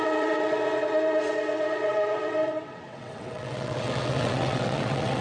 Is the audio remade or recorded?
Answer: remade